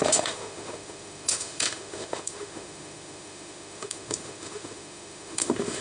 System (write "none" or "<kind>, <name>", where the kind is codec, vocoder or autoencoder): autoencoder, DAC-VAE